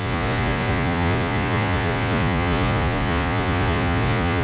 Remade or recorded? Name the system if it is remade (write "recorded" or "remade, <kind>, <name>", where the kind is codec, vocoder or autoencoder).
remade, vocoder, Vocos